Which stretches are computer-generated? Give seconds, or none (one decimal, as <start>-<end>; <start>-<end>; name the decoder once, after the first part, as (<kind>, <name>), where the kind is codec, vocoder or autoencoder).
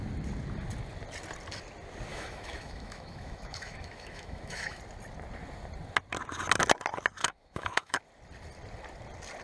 2.1-4.8 (autoencoder, DAC-VAE); 7.2-8.0